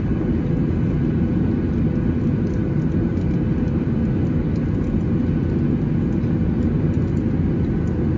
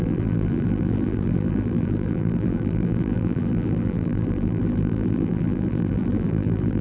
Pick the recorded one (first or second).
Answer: first